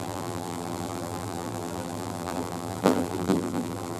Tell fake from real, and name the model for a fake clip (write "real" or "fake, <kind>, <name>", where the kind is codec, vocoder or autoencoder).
fake, vocoder, BigVGAN v2